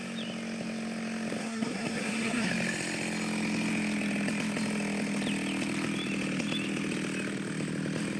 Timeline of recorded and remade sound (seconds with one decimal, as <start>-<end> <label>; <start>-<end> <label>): 0.0-1.4 recorded; 1.4-2.5 remade; 2.5-8.2 recorded